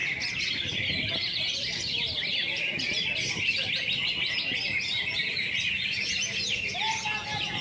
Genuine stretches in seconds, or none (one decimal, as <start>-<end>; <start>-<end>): 0.0-7.6